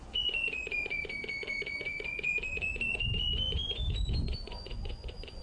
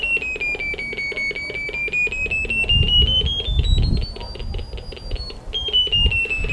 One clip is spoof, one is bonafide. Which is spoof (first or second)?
first